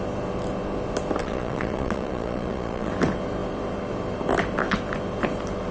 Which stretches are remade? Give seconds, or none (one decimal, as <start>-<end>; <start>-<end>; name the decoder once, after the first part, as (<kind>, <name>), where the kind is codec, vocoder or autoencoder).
1.2-2.9 (vocoder, Vocos)